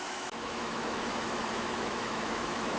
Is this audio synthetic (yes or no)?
yes